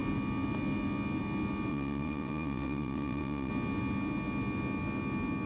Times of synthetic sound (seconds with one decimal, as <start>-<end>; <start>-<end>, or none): 1.7-3.5